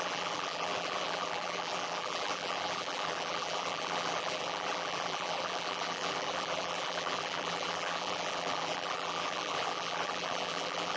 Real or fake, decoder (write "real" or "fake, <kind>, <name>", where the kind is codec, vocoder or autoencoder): fake, vocoder, BigVGAN v2